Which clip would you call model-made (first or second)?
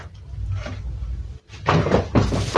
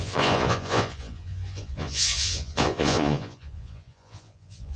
second